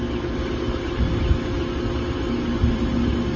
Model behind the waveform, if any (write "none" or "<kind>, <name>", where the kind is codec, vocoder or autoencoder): none